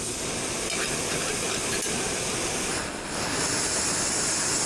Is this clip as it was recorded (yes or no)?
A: yes